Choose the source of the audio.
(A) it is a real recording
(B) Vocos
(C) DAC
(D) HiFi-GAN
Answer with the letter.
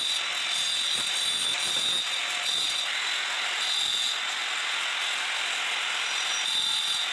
A